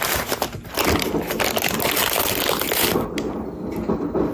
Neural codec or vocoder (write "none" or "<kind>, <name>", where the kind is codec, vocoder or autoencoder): none